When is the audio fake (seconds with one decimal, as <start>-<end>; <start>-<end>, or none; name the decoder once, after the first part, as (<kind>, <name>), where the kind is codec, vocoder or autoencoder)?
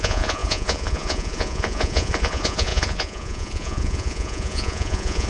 0.0-5.3 (vocoder, Vocos)